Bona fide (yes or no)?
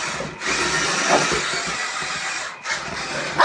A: yes